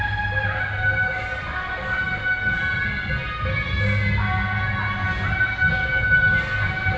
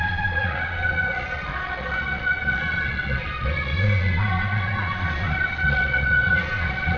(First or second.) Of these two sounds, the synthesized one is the second